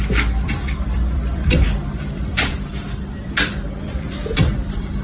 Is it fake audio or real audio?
fake